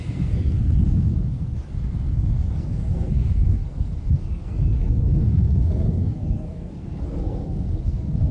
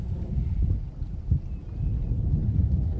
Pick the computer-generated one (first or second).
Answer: first